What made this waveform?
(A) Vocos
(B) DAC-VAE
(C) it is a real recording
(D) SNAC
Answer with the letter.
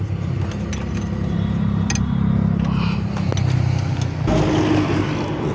C